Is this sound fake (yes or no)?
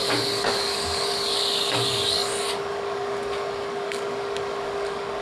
yes